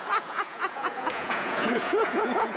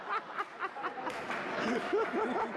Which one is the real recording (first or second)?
second